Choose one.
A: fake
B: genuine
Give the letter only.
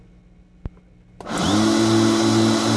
B